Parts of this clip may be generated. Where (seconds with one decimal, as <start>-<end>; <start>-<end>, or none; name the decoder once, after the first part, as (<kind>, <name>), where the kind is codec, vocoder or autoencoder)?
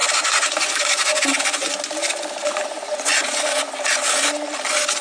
0.0-1.7 (vocoder, Vocos); 2.4-3.7